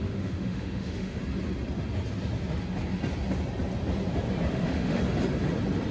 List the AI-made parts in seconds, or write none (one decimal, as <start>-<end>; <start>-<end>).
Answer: 0.0-1.2; 4.5-5.0